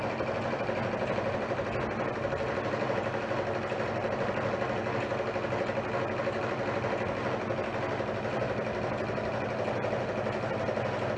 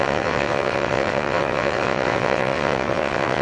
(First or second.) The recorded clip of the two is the first